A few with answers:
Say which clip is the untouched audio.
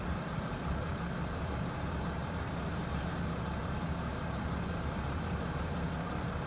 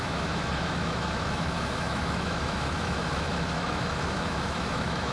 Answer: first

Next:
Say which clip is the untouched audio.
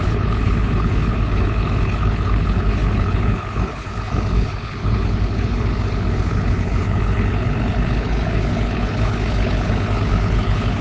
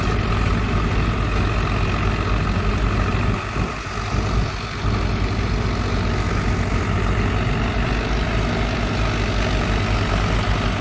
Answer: second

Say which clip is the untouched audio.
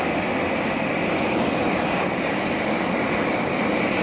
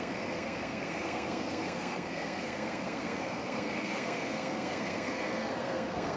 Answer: first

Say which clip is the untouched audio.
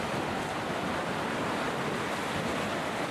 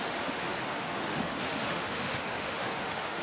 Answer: first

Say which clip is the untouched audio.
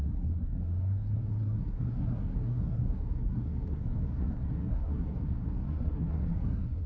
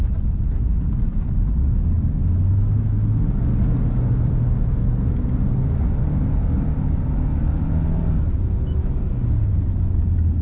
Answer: second